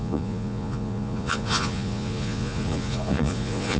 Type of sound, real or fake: fake